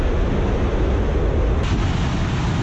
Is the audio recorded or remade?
recorded